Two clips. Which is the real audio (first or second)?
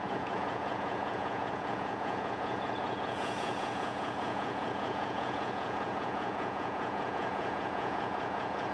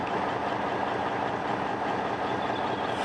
second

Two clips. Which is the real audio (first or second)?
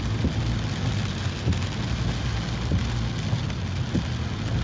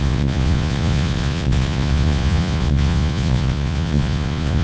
first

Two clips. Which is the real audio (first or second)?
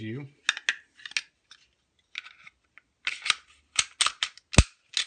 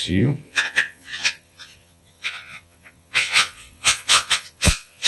first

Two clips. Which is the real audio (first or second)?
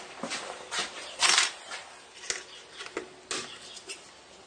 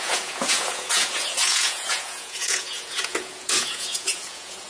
first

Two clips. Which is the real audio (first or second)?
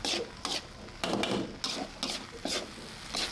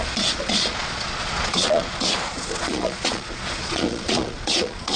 first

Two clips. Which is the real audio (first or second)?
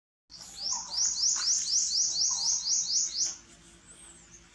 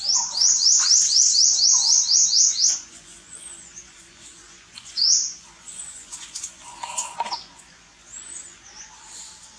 first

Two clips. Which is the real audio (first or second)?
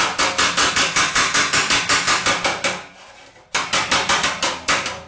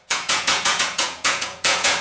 first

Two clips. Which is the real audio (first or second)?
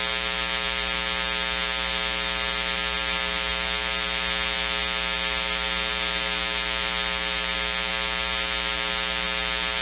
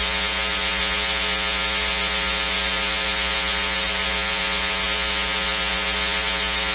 first